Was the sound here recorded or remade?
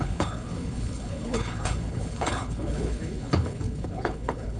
remade